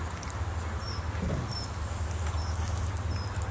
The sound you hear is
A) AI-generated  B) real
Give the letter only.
B